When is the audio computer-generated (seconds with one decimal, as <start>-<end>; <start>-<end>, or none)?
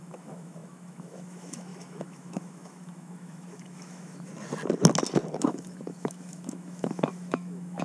0.0-4.3; 5.4-7.8